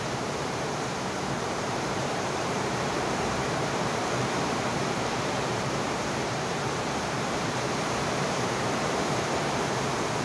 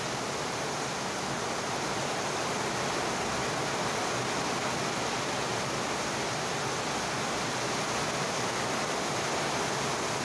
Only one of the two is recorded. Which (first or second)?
second